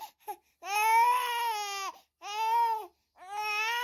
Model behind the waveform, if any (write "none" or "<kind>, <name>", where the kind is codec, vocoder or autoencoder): none